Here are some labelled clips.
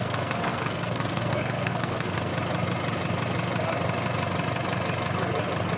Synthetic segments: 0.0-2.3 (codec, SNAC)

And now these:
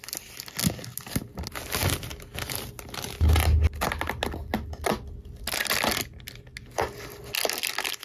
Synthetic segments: none

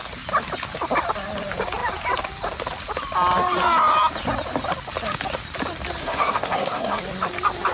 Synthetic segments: 6.0-7.0 (codec, SNAC)

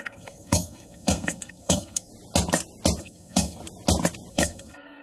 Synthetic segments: 0.0-2.1 (codec, SNAC); 3.0-3.6; 4.3-5.0